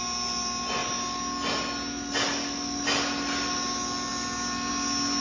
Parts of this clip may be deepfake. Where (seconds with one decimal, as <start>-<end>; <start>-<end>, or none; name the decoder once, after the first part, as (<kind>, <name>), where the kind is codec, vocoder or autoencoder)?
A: none